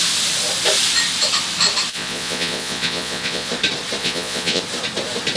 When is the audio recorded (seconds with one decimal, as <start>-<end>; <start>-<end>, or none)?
0.0-1.9; 3.5-4.0; 4.6-5.4